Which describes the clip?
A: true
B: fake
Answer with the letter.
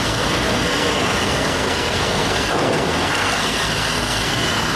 B